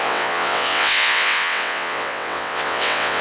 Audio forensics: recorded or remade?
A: remade